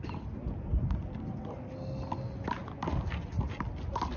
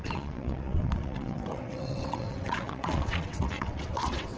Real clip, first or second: first